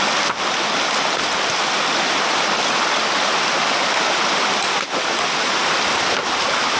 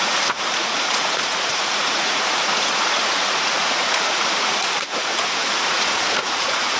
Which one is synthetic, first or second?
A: second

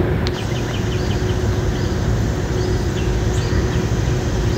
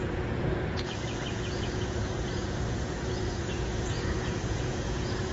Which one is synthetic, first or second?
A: second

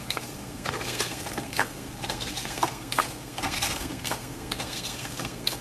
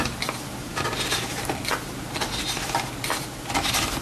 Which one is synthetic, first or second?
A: first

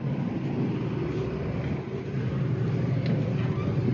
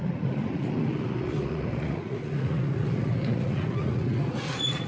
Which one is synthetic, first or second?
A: second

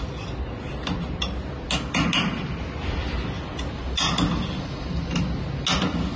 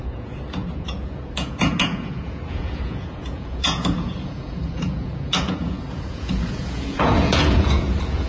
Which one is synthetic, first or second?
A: second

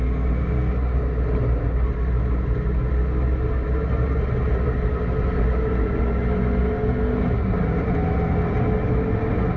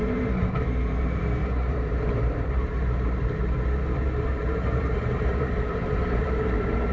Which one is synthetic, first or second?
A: second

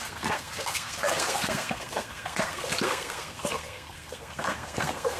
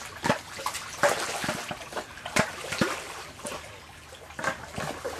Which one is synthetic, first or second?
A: first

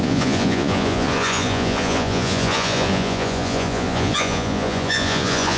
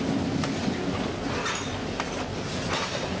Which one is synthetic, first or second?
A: first